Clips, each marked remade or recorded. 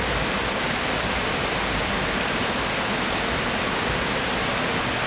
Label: recorded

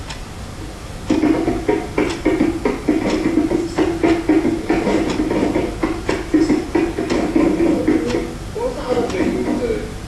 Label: recorded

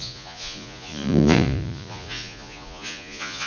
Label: remade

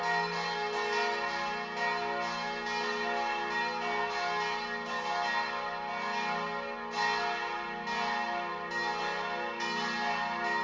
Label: recorded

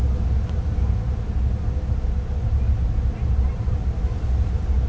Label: recorded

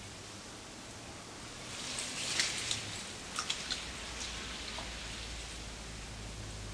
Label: recorded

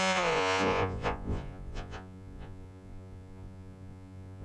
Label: remade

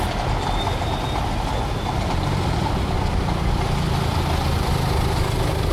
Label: recorded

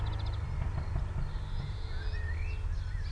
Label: recorded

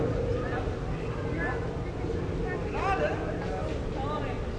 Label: recorded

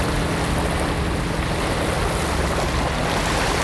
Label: recorded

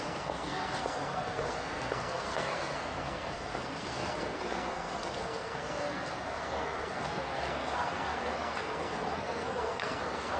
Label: remade